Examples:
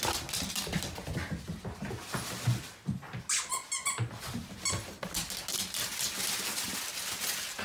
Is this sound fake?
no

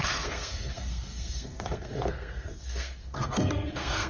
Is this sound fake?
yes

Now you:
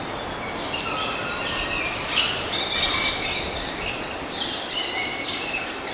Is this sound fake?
no